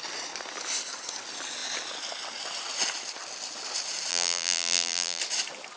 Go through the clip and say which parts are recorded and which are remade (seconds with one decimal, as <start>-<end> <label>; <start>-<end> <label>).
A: 0.0-4.1 recorded; 4.1-5.2 remade; 5.2-5.8 recorded